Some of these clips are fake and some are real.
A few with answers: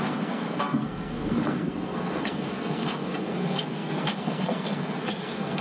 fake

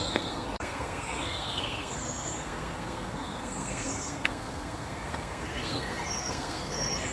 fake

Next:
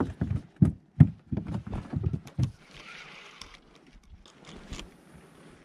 real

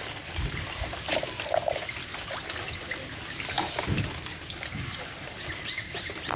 real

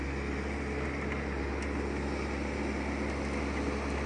real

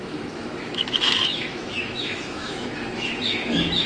fake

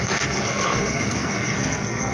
fake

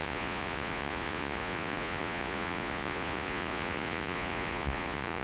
fake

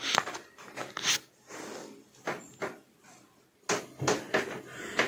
real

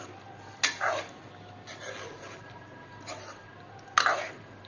real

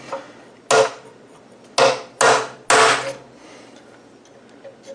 real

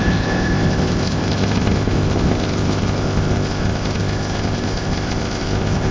fake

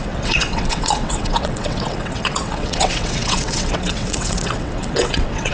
fake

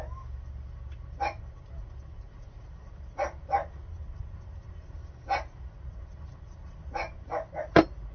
real